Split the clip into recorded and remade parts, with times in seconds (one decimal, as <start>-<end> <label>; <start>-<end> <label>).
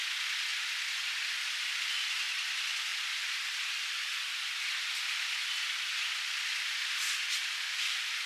0.0-8.3 recorded